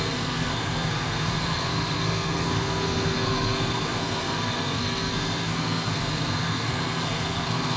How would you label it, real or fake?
fake